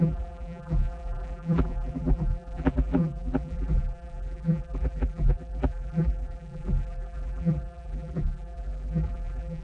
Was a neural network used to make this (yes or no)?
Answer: yes